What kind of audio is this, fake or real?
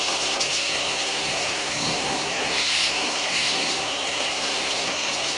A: fake